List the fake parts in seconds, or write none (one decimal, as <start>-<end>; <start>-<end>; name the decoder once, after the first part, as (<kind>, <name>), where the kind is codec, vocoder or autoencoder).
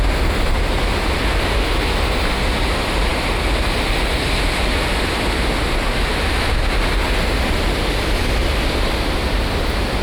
none